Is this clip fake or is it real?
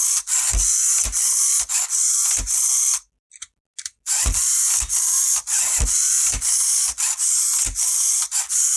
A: real